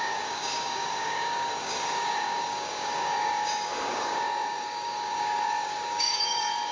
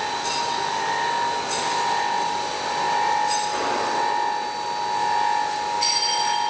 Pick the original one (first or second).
second